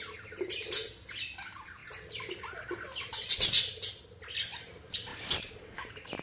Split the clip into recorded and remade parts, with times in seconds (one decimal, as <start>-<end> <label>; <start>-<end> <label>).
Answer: 0.0-6.2 recorded